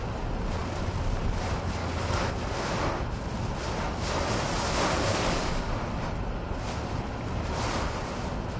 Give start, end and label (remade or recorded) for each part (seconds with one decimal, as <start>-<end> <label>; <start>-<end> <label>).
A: 0.0-1.8 recorded; 1.8-2.3 remade; 2.3-5.1 recorded; 5.1-5.7 remade; 5.7-8.6 recorded